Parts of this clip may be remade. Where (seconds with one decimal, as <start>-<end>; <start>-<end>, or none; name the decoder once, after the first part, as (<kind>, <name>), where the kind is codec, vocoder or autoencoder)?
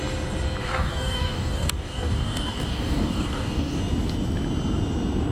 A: 0.6-3.8 (codec, DAC)